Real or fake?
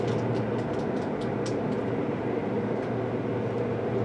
real